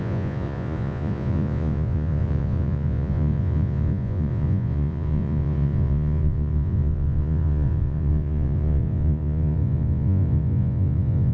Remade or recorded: remade